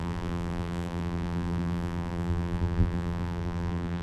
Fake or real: fake